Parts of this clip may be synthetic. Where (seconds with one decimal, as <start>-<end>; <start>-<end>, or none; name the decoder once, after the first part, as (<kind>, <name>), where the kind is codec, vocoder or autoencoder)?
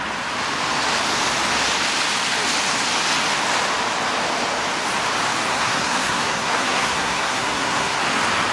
5.5-8.0 (codec, SNAC)